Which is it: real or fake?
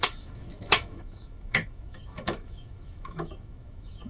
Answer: fake